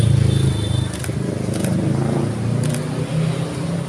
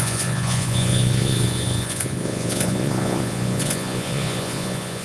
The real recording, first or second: first